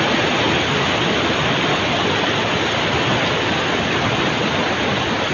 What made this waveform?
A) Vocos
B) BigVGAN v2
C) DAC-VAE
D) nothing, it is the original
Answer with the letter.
D